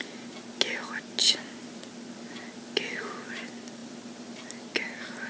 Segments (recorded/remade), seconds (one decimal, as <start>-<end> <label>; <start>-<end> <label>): 0.0-1.2 recorded; 1.2-1.8 remade; 1.8-3.8 recorded; 3.8-4.6 remade; 4.6-5.3 recorded